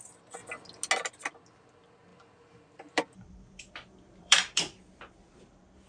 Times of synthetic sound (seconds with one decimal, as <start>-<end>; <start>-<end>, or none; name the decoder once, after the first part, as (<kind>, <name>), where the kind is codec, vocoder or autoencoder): 2.1-4.9 (vocoder, BigVGAN v2)